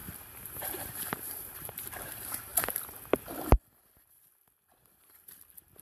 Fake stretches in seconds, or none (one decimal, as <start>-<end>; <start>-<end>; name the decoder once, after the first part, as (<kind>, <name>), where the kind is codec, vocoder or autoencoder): 0.0-2.5 (vocoder, BigVGAN v2)